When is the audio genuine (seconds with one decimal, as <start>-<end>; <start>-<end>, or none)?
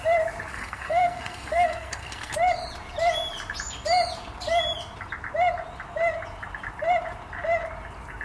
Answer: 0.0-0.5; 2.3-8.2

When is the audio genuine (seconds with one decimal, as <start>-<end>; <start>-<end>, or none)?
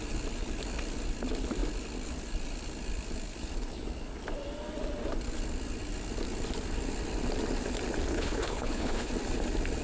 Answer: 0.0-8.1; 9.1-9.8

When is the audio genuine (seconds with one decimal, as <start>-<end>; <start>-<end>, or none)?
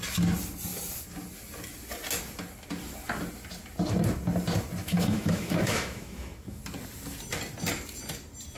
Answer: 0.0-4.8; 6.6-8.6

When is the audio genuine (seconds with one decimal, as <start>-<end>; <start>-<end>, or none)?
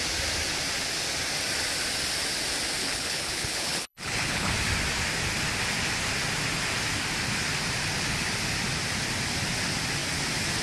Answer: 0.0-2.8; 4.5-10.6